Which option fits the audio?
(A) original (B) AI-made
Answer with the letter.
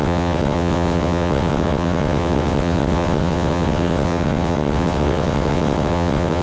B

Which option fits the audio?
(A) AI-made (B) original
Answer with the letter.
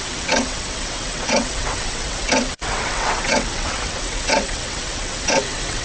A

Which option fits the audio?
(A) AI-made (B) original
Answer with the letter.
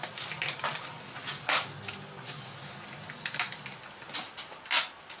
B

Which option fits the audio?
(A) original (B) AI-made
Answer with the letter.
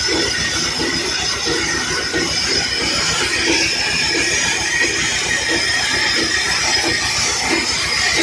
A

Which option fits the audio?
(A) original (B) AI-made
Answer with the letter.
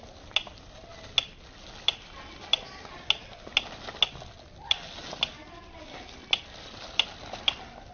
A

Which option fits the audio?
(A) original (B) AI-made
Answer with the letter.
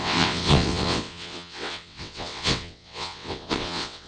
B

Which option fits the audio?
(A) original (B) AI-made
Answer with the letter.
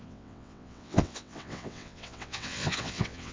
B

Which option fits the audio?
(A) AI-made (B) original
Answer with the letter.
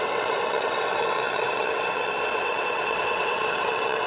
A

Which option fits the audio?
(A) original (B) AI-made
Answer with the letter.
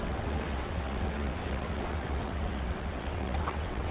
B